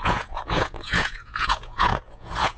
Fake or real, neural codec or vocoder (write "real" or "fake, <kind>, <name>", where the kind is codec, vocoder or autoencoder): fake, vocoder, Vocos